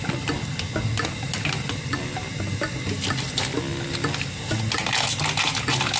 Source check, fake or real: real